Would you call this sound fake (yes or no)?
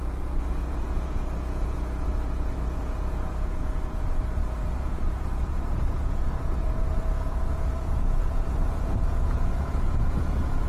yes